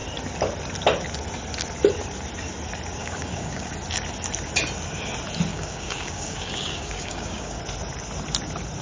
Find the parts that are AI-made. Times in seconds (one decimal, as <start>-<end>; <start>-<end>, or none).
3.0-3.7; 5.5-7.6